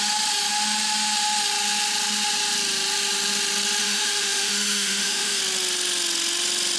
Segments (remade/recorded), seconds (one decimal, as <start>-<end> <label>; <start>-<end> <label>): 0.0-3.8 recorded; 3.8-5.4 remade; 5.4-6.8 recorded